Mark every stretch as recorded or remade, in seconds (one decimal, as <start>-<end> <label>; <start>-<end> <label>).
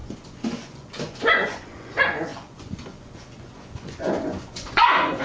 0.0-5.2 remade